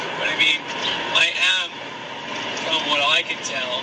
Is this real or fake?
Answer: real